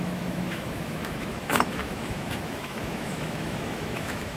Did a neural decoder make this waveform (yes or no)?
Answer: yes